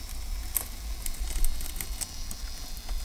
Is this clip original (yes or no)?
yes